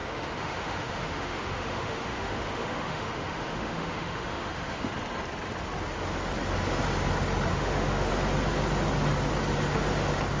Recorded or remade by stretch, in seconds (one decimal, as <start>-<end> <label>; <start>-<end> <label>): 0.0-4.9 remade; 4.9-7.5 recorded; 7.5-8.1 remade; 8.1-10.4 recorded